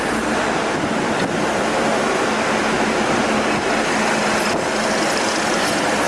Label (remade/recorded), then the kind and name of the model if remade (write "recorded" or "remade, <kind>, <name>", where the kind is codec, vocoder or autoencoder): recorded